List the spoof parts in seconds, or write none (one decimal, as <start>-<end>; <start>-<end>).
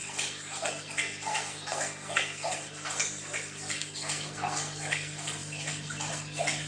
0.0-6.7